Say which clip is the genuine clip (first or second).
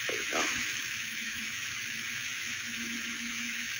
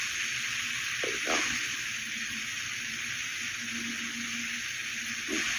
second